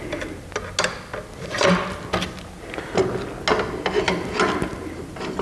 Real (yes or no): yes